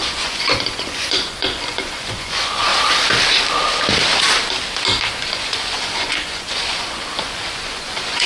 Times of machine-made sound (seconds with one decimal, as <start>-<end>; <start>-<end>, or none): 0.0-2.7; 5.1-8.3